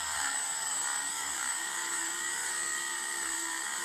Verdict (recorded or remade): remade